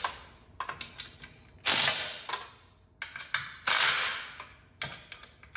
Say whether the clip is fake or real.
real